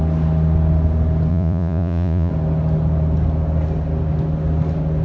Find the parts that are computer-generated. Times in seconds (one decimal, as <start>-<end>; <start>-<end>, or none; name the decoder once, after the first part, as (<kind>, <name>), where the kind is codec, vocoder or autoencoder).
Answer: 1.3-2.3 (vocoder, Vocos)